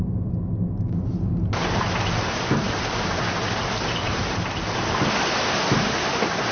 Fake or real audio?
real